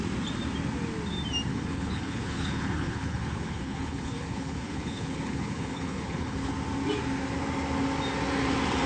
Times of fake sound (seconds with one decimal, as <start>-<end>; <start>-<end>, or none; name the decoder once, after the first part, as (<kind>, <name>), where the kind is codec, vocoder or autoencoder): 1.5-6.5 (codec, HILCodec)